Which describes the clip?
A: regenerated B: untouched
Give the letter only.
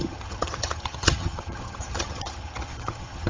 A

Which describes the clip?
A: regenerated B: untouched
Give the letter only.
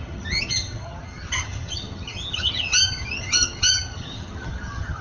A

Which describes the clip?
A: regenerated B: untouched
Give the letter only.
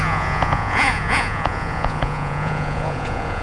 A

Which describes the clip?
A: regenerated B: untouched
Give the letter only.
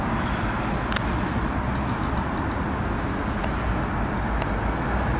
B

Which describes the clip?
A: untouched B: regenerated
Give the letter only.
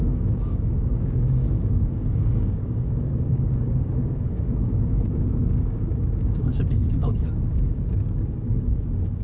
B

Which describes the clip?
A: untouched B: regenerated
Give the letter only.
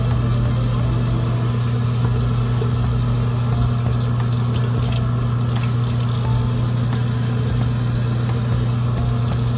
A